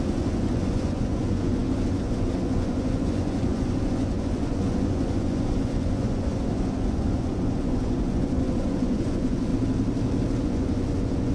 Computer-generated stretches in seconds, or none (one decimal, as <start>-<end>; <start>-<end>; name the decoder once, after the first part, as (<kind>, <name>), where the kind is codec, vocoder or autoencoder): 0.0-9.5 (vocoder, Vocos); 10.4-11.3

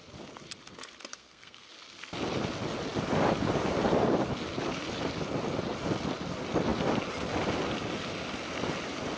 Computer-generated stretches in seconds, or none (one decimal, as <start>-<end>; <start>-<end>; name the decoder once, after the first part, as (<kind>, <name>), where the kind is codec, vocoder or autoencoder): 1.1-1.7 (codec, SNAC)